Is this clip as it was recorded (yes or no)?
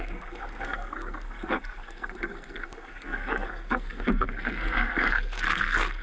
no